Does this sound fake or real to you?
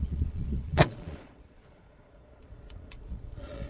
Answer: fake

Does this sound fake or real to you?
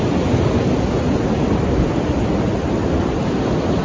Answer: real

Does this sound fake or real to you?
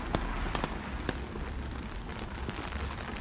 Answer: real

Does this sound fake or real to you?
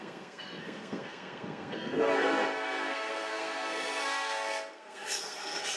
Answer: fake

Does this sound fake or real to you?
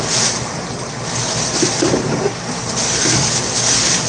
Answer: real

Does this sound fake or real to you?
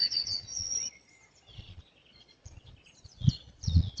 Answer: fake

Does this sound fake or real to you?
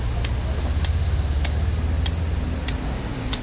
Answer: real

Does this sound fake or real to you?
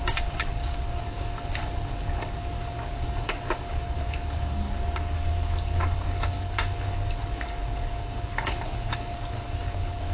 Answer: fake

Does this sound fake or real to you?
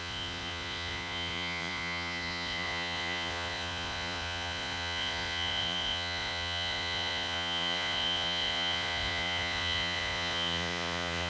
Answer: fake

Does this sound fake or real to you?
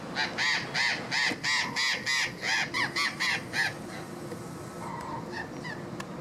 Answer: real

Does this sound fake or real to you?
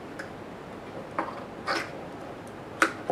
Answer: real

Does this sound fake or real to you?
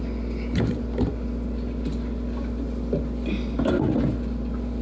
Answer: real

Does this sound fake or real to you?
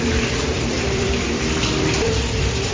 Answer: fake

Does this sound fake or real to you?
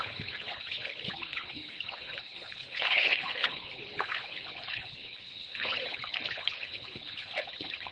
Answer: fake